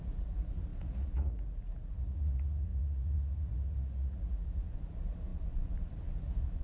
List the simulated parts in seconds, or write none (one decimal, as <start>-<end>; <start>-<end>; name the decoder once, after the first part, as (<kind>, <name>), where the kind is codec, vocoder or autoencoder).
0.0-6.6 (vocoder, Vocos)